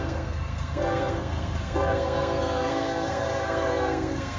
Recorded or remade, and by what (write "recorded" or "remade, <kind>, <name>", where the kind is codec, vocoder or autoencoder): remade, codec, SNAC